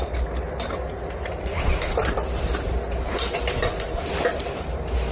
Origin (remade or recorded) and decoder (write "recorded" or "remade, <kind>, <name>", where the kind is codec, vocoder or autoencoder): recorded